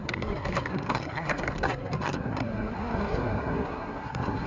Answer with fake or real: fake